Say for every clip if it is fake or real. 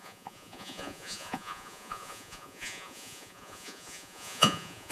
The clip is fake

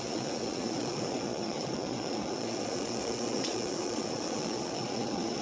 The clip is fake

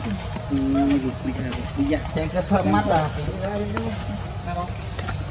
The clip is real